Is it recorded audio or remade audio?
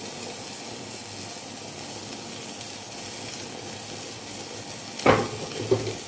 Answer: recorded